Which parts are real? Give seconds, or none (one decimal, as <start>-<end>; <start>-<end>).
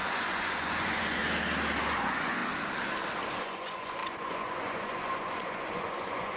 1.2-1.8; 2.4-3.3